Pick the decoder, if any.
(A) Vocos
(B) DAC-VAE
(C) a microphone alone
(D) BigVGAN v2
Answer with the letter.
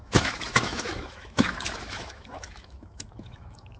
B